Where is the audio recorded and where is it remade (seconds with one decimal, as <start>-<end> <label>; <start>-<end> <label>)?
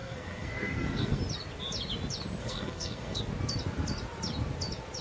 0.0-1.2 remade; 1.2-2.4 recorded; 2.4-3.2 remade; 3.2-5.0 recorded